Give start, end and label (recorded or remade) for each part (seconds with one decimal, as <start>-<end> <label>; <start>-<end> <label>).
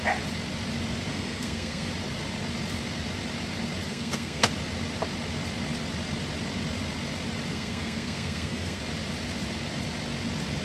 0.0-1.1 recorded; 1.1-1.9 remade; 1.9-3.9 recorded; 3.9-4.5 remade; 4.5-7.5 recorded; 7.5-8.8 remade; 8.8-10.6 recorded